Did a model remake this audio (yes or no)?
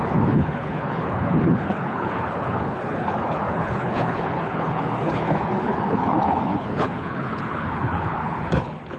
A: yes